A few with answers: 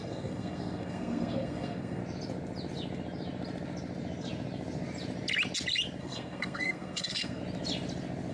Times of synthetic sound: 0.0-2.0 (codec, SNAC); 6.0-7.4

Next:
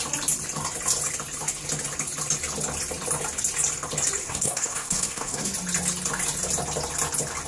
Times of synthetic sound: 4.2-5.5 (codec, SNAC)

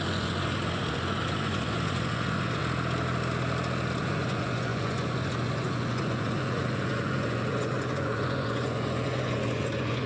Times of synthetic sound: 0.0-2.6 (vocoder, Vocos); 4.0-10.1

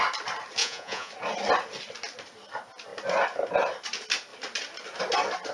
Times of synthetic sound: 0.6-1.1 (vocoder, Vocos)